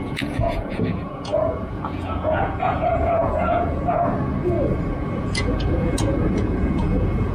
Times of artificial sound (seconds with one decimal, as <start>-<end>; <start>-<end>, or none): 0.0-4.1; 5.2-7.3

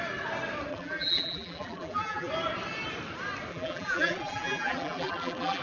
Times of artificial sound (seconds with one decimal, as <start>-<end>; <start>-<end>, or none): 0.7-2.3; 3.5-5.6